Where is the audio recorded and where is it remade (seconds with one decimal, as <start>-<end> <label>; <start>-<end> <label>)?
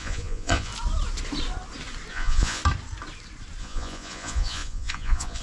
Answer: 0.0-0.7 remade; 0.7-2.1 recorded; 2.1-2.6 remade; 2.6-3.6 recorded; 3.6-5.4 remade